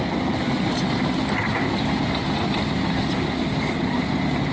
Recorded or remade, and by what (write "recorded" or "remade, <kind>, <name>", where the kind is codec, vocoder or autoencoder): recorded